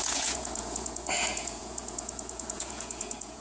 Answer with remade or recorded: remade